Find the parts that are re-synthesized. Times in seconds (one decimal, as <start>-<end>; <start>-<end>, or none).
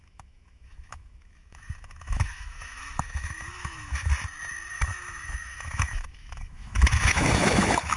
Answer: 0.0-4.1; 4.7-8.0